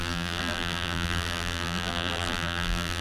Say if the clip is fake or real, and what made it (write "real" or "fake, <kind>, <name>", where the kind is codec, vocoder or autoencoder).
fake, vocoder, BigVGAN v2